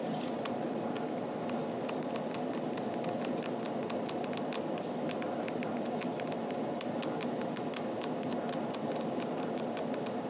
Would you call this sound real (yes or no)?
yes